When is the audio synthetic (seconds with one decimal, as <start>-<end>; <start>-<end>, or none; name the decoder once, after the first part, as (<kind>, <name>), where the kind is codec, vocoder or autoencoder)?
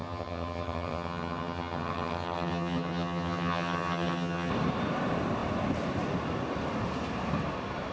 0.0-4.5 (vocoder, HiFi-GAN)